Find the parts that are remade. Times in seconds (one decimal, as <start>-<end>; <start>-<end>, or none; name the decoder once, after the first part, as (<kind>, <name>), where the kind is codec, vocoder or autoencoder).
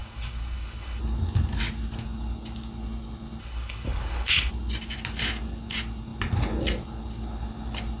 0.0-1.0 (codec, HILCodec); 3.4-4.5